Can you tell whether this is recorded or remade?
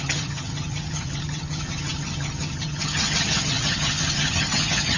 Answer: remade